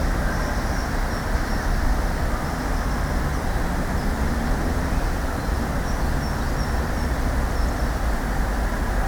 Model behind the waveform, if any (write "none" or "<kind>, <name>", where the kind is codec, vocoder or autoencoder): none